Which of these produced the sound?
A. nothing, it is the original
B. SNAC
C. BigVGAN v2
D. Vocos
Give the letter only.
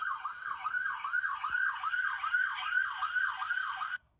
A